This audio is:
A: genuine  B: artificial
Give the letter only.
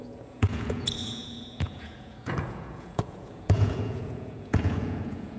B